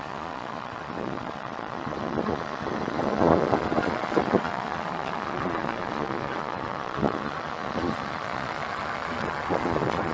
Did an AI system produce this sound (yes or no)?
yes